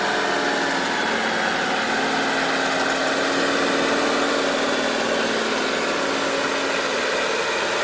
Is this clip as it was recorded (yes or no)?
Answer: yes